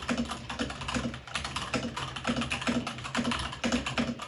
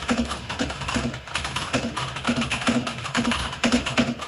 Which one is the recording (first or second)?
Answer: first